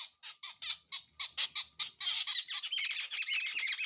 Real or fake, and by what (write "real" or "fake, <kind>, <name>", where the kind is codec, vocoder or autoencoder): real